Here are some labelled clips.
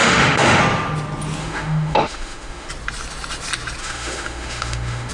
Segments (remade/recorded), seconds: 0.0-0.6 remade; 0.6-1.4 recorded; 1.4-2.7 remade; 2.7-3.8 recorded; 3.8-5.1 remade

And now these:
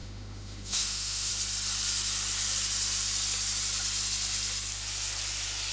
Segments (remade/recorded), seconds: 0.0-1.3 remade; 1.3-5.7 recorded

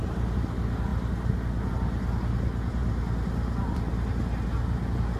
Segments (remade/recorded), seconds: 0.0-5.2 recorded

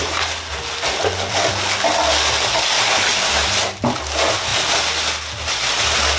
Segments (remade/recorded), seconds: 0.0-6.2 recorded

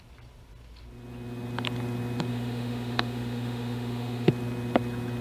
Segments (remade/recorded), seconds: 0.0-2.3 recorded; 2.3-4.3 remade; 4.3-5.2 recorded

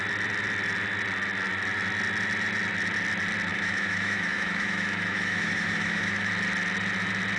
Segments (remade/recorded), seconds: 0.0-3.5 recorded; 3.5-6.3 remade; 6.3-7.4 recorded